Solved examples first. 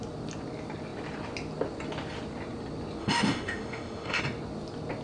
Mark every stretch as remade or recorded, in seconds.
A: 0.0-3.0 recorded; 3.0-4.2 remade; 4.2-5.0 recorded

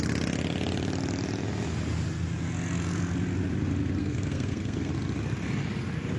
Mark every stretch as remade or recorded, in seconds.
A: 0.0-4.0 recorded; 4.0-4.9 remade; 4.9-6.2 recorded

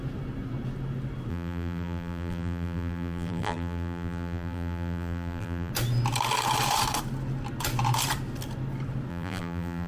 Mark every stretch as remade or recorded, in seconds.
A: 0.0-1.3 recorded; 1.3-5.7 remade; 5.7-9.1 recorded; 9.1-9.9 remade